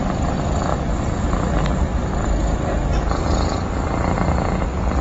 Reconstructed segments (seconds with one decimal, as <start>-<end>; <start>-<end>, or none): 0.7-3.7